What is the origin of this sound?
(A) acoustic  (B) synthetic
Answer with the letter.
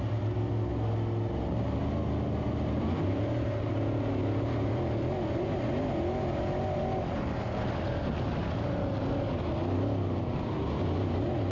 A